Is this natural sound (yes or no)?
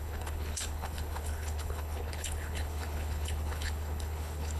no